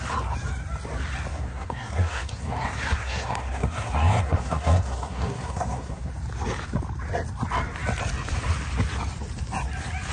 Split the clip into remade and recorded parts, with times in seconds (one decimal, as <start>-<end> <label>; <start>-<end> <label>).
0.0-1.3 recorded; 1.3-6.1 remade; 6.1-10.1 recorded